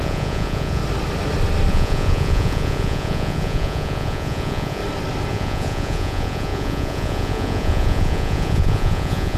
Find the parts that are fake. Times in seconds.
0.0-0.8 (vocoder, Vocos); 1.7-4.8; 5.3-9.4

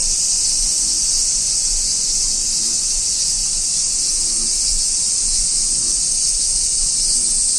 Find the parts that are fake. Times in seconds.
0.6-7.6 (vocoder, Vocos)